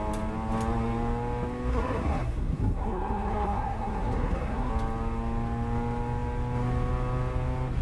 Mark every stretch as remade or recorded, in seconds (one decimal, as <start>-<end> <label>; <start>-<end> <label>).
0.0-1.7 recorded; 1.7-4.7 remade; 4.7-7.8 recorded